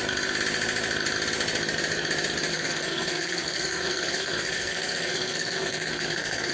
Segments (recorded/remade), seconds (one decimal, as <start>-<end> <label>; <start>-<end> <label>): 0.0-2.5 recorded; 2.5-6.5 remade